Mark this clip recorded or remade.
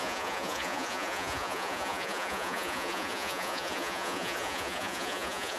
remade